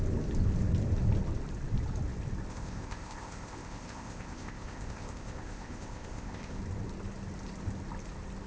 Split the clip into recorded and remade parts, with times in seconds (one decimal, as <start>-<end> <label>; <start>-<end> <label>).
0.0-2.5 recorded; 2.5-6.6 remade; 6.6-8.5 recorded